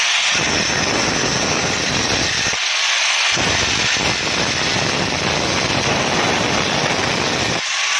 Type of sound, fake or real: real